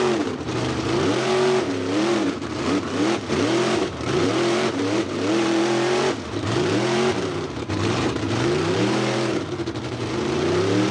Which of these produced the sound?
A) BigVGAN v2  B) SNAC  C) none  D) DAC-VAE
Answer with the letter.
A